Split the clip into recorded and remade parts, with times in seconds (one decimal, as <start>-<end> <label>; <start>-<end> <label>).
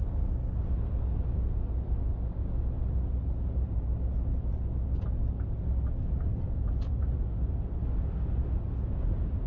0.0-9.5 recorded